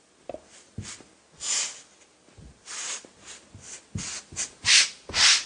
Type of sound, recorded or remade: recorded